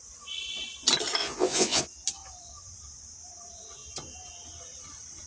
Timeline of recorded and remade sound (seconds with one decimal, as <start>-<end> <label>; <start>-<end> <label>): 0.0-1.2 recorded; 1.2-1.8 remade; 1.8-5.3 recorded